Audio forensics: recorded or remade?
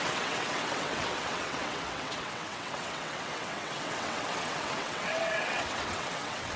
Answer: remade